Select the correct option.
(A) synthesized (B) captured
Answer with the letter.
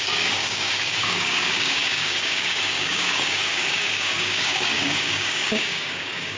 A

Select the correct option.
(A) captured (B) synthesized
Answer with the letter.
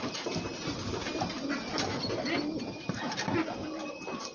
A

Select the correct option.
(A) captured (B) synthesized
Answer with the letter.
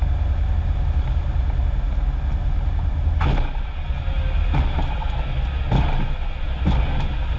A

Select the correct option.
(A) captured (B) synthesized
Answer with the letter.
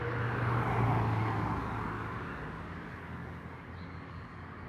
B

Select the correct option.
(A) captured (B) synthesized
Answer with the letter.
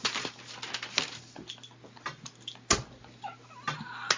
A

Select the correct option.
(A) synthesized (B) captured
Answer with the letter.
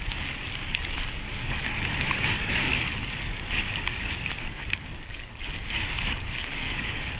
A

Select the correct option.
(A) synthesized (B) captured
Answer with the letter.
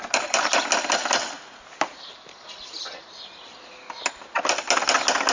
B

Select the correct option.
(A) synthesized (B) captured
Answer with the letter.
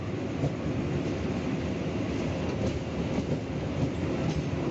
B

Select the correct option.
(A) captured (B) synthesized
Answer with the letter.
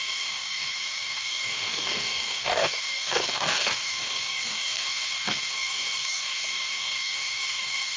B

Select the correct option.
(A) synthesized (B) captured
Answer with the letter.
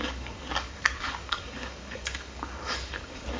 A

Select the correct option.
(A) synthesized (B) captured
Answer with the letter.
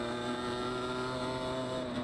B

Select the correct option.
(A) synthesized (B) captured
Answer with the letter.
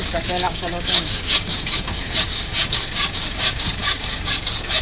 A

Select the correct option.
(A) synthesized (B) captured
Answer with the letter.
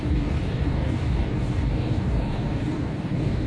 A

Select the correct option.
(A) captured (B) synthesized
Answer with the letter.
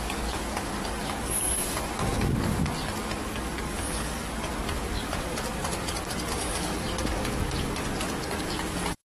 B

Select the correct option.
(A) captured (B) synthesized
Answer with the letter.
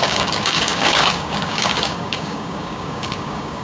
B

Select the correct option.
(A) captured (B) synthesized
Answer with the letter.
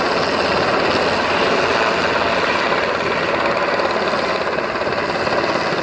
A